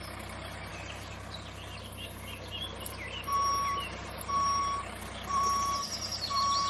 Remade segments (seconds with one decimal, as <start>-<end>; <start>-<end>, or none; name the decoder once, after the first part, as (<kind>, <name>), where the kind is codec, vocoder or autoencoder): none